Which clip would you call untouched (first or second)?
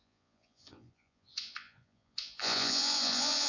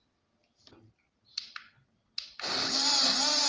second